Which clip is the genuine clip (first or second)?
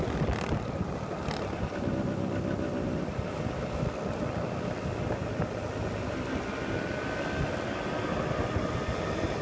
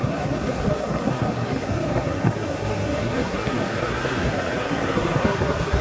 first